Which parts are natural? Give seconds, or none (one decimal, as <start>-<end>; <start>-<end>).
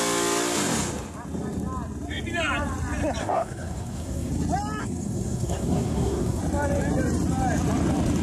0.0-3.2; 4.3-4.8; 6.4-8.2